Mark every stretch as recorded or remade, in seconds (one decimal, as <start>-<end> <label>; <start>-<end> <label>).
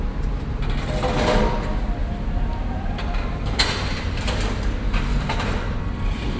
0.0-2.0 recorded; 2.0-5.8 remade; 5.8-6.4 recorded